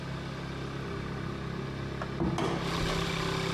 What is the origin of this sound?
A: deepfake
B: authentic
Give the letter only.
B